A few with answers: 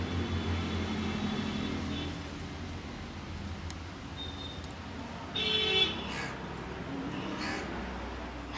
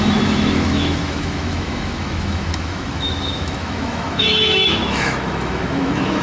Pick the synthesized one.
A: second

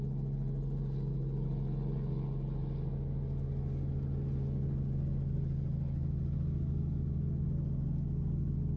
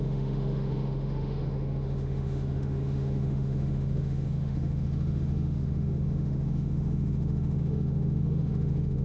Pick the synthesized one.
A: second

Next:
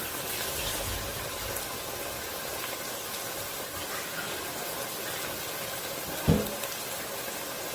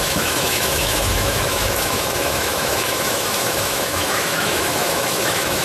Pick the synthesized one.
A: second